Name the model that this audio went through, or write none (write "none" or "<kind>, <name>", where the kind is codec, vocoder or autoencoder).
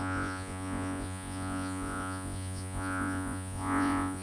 vocoder, Vocos